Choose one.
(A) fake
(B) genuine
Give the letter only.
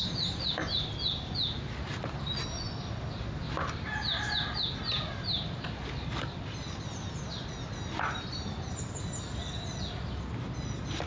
B